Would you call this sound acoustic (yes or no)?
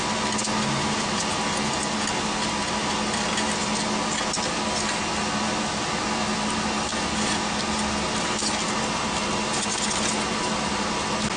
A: yes